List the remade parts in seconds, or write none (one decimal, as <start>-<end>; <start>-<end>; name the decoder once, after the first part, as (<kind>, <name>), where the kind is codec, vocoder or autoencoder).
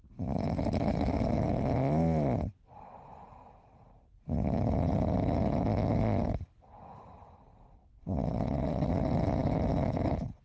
7.8-8.9 (vocoder, WaveNeXt)